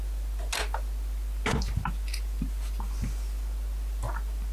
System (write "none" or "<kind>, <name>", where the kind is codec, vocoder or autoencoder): none